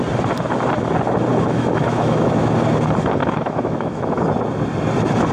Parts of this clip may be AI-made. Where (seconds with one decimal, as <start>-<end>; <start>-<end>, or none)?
1.3-2.5; 3.2-4.2

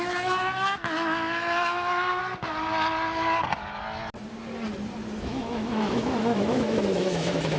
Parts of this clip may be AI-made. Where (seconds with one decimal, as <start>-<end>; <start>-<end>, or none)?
0.0-2.2; 5.2-7.6

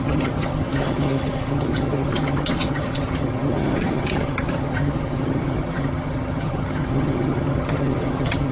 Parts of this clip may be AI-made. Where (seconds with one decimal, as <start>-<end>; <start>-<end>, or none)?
0.0-8.5

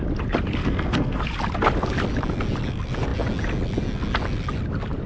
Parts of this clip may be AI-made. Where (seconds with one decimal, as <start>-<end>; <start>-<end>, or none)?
0.6-1.2

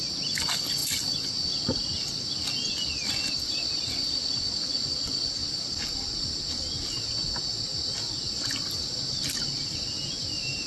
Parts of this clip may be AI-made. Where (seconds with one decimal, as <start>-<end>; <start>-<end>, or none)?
none

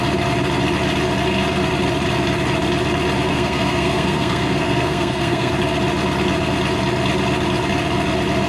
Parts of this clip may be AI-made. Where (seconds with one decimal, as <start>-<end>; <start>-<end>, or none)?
3.3-5.5